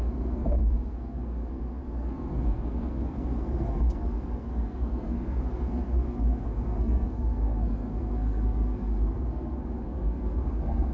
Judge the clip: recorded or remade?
remade